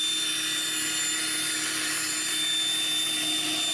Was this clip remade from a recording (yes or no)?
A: no